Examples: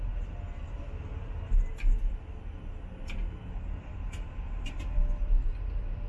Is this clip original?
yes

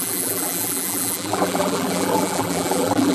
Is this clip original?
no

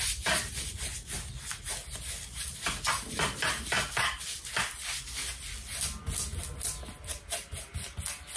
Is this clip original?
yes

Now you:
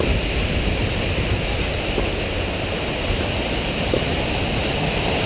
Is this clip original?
yes